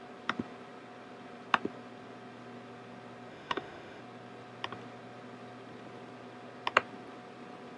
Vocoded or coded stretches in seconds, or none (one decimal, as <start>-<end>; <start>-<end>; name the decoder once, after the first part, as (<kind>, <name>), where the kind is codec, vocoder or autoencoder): 3.3-4.0 (autoencoder, DAC-VAE)